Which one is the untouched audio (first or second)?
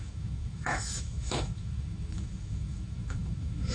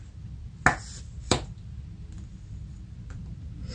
second